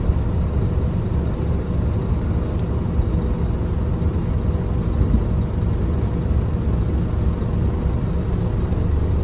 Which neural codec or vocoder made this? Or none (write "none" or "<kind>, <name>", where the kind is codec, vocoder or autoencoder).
none